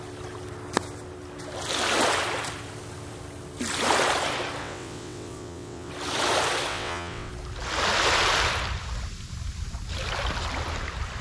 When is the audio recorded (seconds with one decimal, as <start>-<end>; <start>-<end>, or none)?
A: 0.0-4.6; 5.9-6.7; 7.3-11.2